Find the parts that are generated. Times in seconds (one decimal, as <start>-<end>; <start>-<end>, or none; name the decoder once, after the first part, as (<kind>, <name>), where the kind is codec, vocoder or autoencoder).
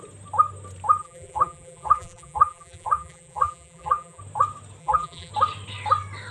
1.0-4.2 (vocoder, BigVGAN v2); 4.8-5.3